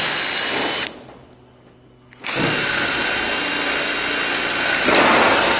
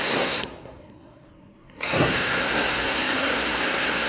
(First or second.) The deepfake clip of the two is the second